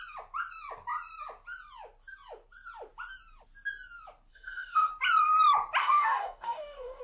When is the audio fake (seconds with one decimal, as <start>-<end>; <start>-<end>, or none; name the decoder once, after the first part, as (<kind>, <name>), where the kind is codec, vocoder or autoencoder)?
4.3-4.9 (codec, DAC); 5.8-7.0